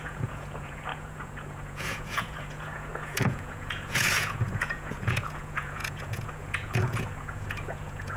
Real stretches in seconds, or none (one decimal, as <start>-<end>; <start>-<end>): none